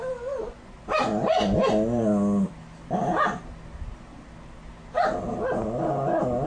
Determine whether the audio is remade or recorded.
recorded